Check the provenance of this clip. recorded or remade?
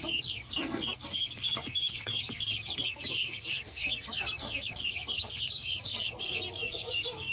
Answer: remade